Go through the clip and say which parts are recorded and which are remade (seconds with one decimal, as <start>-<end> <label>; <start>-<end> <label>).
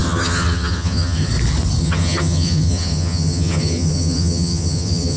0.0-1.3 remade; 1.3-1.8 recorded; 1.8-5.2 remade